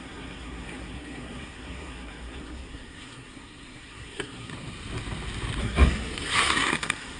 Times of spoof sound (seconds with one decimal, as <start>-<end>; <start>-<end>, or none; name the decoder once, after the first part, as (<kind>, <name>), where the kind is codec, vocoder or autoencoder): 0.0-4.5 (codec, SNAC); 5.6-7.2